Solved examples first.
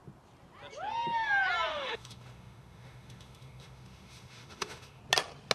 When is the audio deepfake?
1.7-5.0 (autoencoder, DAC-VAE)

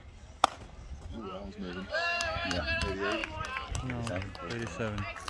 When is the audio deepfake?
1.3-2.6 (autoencoder, DAC-VAE)

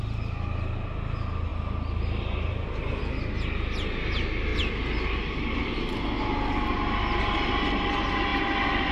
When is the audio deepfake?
none

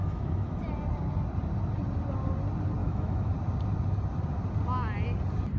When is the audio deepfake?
0.0-0.6 (autoencoder, DAC-VAE); 2.8-3.3

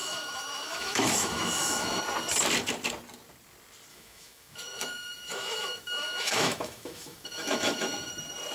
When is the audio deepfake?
0.0-2.0 (autoencoder, DAC-VAE); 3.9-8.1